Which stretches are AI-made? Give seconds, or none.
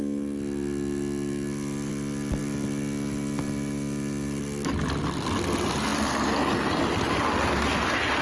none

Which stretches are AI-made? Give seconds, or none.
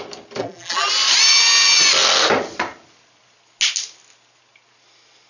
0.4-0.9 (vocoder, BigVGAN v2)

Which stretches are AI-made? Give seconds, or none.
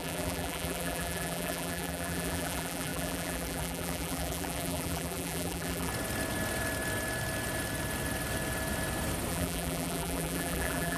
0.0-5.9 (vocoder, BigVGAN v2); 9.3-11.0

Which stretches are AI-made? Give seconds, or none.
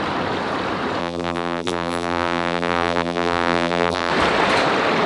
1.0-4.1 (vocoder, BigVGAN v2)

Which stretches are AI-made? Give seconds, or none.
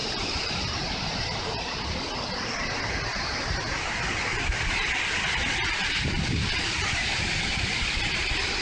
0.0-0.6 (vocoder, BigVGAN v2); 3.1-8.6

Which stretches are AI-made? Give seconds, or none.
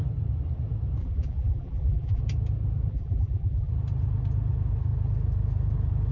1.0-2.2 (vocoder, BigVGAN v2); 2.9-3.7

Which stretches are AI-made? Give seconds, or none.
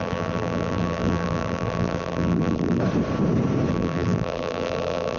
0.0-2.8 (vocoder, BigVGAN v2); 3.7-5.2